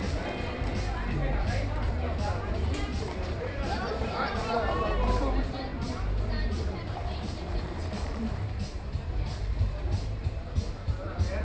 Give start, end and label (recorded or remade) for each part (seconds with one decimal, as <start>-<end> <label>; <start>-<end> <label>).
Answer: 0.0-0.7 remade; 0.7-1.8 recorded; 1.8-5.7 remade; 5.7-6.3 recorded; 6.3-11.4 remade